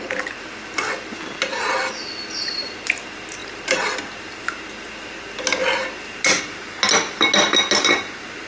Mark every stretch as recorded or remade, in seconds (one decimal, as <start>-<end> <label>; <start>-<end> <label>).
0.0-8.5 recorded